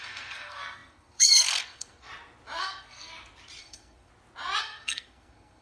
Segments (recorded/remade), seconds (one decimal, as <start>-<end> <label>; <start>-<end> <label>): 0.0-2.1 remade; 2.1-2.6 recorded; 2.6-3.1 remade; 3.1-3.6 recorded; 3.6-4.1 remade; 4.1-4.6 recorded; 4.6-5.6 remade